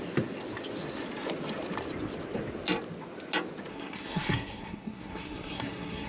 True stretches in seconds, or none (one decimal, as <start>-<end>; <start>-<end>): 0.0-3.7